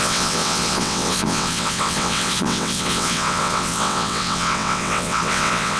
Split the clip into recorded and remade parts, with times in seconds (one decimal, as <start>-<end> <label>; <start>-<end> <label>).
0.0-5.8 remade